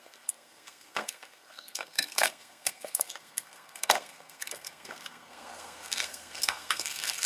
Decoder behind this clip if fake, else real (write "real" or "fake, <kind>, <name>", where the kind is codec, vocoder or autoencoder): fake, codec, SNAC